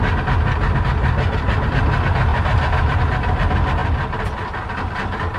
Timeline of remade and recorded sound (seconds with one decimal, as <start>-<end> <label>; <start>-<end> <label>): 0.0-2.3 recorded; 2.3-3.3 remade; 3.3-5.4 recorded